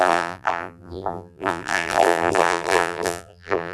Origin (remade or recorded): remade